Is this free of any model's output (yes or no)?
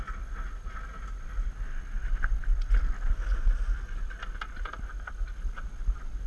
yes